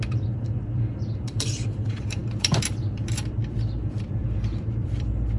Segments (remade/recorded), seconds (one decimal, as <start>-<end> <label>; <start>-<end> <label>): 0.0-5.4 remade